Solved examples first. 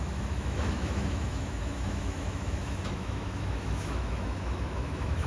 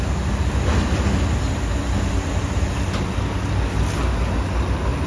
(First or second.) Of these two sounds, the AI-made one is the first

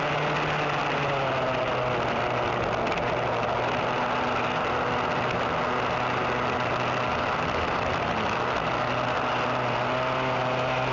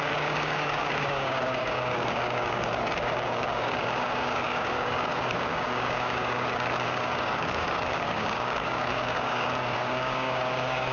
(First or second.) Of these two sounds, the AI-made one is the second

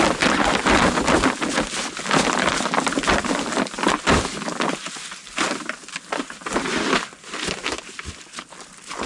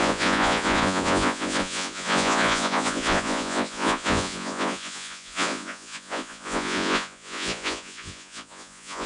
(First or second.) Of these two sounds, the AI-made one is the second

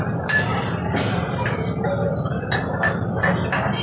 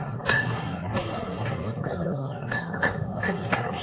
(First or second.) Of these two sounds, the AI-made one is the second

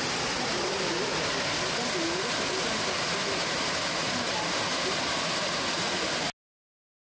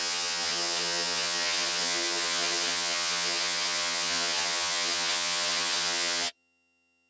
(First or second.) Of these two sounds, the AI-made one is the second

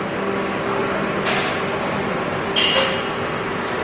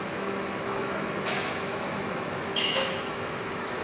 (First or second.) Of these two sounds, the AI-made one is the second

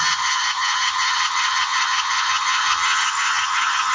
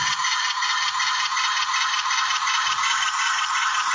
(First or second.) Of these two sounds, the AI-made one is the first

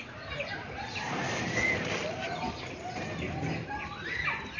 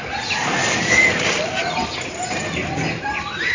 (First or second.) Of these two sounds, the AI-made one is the first